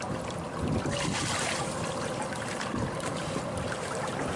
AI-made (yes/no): no